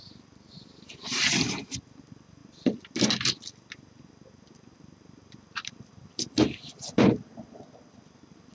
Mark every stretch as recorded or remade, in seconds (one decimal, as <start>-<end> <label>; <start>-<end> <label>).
0.0-8.5 recorded